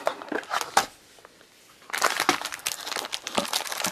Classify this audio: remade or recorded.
recorded